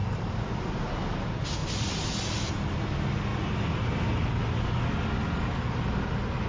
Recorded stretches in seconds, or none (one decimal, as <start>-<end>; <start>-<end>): 0.9-1.6; 2.5-6.5